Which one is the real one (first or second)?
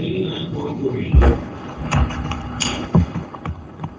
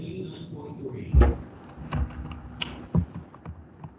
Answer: second